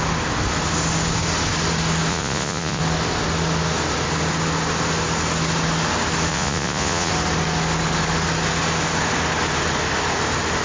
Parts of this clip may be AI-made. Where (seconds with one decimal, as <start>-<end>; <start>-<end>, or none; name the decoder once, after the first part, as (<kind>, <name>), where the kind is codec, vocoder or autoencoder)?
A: 2.1-2.8 (vocoder, Vocos); 6.3-7.1